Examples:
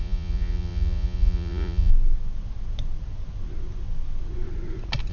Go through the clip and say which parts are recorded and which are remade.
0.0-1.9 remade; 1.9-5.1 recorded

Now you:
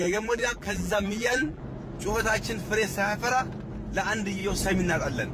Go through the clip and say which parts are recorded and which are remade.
0.0-1.6 remade; 1.6-5.3 recorded

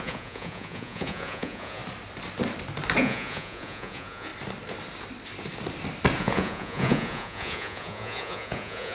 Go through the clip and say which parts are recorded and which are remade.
0.0-1.8 remade; 1.8-3.0 recorded; 3.0-4.3 remade; 4.3-6.2 recorded; 6.2-8.9 remade

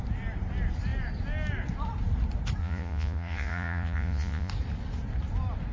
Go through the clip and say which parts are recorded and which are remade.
0.0-2.6 recorded; 2.6-4.5 remade; 4.5-5.7 recorded